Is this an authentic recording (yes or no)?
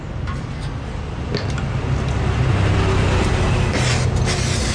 yes